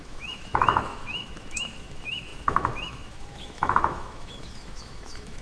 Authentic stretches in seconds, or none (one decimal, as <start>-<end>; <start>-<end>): none